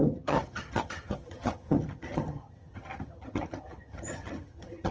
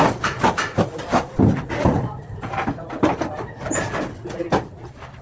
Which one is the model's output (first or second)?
first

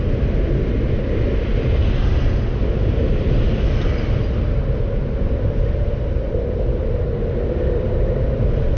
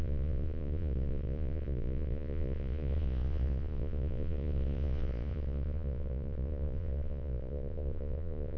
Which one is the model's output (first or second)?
second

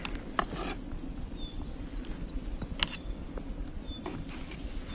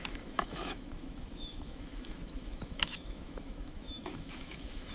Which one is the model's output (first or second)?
second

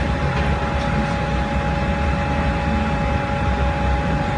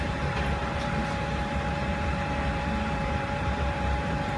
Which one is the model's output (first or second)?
second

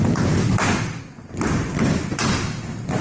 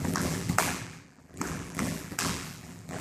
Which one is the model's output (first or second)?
second